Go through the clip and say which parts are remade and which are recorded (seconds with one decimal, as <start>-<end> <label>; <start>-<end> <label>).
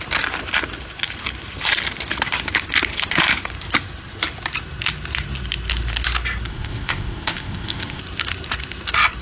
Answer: 0.0-6.5 recorded; 6.5-8.0 remade; 8.0-9.2 recorded